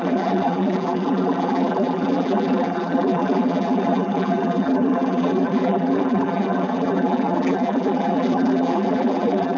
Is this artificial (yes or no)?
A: yes